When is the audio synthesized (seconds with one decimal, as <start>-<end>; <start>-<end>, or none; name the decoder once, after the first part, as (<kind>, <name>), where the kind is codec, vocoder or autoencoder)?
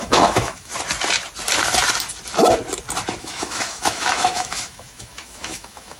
0.0-0.7 (autoencoder, DAC-VAE); 3.2-6.0